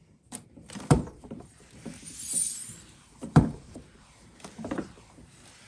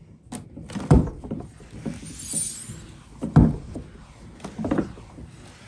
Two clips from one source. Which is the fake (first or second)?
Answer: first